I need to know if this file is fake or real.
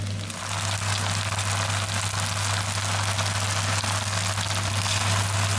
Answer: real